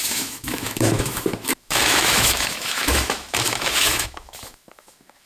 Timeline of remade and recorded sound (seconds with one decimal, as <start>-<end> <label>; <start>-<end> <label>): 0.0-5.3 remade